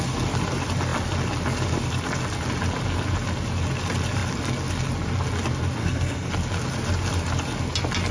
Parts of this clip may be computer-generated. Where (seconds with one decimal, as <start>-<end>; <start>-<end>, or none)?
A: 5.8-6.3